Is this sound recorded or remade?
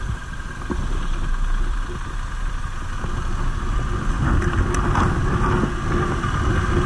recorded